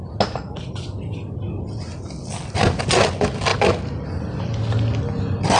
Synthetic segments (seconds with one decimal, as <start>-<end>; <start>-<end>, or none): none